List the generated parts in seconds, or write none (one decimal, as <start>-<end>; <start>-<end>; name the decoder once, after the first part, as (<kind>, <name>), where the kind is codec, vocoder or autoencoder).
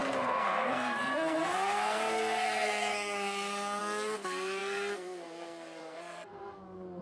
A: 0.0-7.0 (codec, SNAC)